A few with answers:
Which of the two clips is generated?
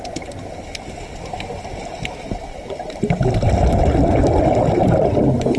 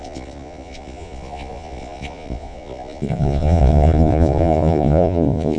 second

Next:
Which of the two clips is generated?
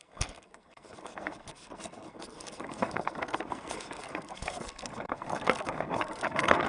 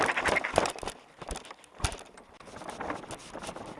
first